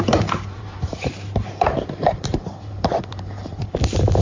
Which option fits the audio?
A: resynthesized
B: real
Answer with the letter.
A